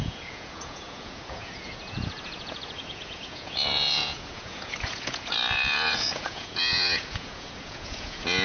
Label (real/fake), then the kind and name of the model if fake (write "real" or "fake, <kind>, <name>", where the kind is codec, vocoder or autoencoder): fake, vocoder, Vocos